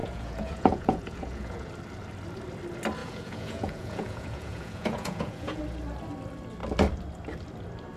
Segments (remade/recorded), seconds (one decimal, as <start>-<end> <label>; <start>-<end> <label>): 0.0-1.7 remade; 1.7-3.0 recorded; 3.0-5.6 remade; 5.6-8.0 recorded